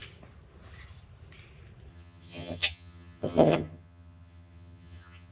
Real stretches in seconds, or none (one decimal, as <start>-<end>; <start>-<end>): 0.0-1.9